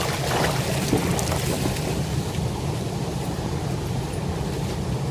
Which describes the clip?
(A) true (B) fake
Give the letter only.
A